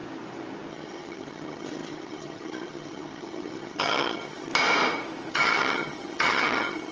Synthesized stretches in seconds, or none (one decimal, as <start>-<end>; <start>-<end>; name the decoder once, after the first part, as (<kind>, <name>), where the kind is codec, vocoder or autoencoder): 0.7-4.5 (vocoder, HiFi-GAN); 5.3-6.9